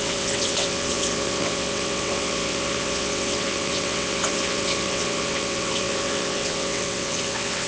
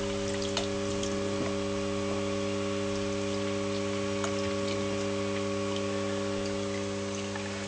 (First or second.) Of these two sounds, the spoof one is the first